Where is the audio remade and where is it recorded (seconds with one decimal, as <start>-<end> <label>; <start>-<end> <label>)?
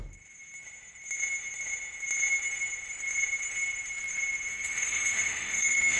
0.0-4.5 recorded; 4.5-6.0 remade